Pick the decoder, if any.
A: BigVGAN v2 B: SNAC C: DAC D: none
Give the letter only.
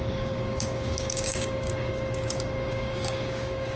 C